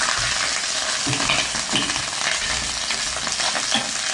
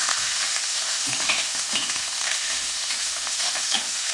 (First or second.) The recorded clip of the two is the first